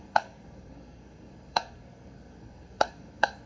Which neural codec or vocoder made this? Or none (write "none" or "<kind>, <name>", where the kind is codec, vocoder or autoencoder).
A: codec, SNAC